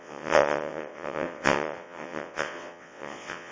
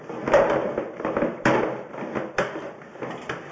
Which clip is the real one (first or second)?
second